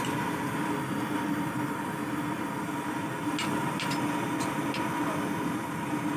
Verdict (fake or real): real